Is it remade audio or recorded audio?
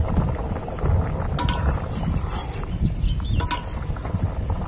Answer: recorded